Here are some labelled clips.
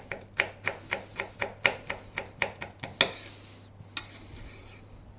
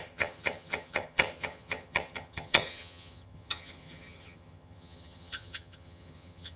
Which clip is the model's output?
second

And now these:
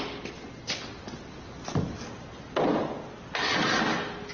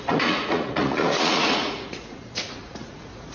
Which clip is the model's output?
second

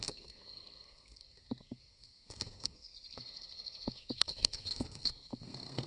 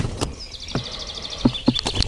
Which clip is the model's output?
first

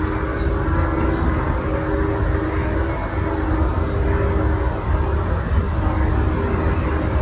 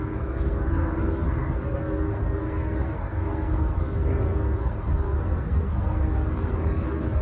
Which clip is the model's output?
second